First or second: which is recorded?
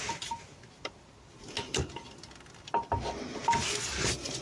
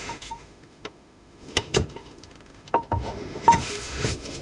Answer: first